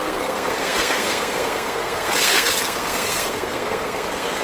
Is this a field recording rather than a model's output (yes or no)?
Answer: no